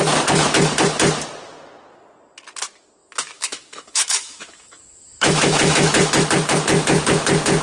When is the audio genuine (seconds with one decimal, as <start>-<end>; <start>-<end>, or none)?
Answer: 0.0-3.0; 6.3-7.6